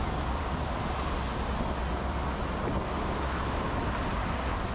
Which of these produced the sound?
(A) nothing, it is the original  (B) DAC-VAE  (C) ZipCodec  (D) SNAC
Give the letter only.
A